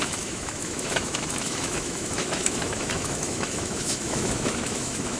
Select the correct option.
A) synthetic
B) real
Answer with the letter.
A